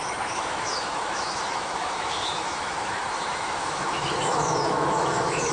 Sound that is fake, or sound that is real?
fake